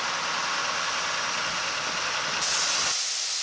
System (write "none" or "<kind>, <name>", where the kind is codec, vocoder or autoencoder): none